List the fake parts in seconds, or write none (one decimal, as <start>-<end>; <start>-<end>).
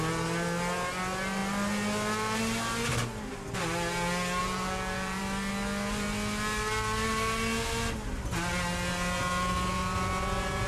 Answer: 4.4-5.2